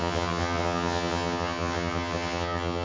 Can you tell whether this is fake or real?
fake